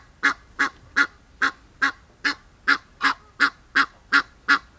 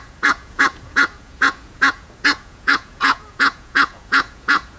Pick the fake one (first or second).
second